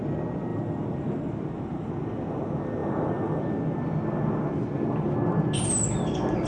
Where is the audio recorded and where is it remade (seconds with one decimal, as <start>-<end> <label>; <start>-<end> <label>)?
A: 0.0-0.5 recorded; 0.5-1.9 remade; 1.9-2.8 recorded; 2.8-3.4 remade; 3.4-6.5 recorded